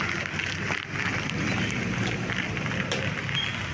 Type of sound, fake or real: real